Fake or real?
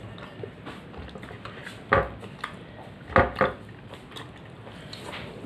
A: real